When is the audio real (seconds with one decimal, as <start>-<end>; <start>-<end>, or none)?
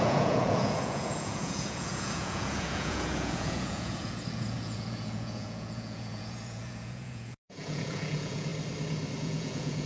8.5-9.2